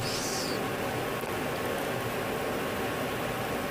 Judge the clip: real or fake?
real